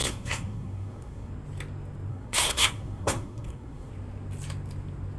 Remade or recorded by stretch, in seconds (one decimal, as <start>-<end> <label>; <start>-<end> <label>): 0.0-1.3 remade; 1.3-2.1 recorded; 2.1-3.9 remade; 3.9-5.2 recorded